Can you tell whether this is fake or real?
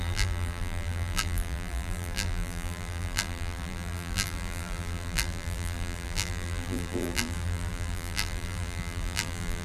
fake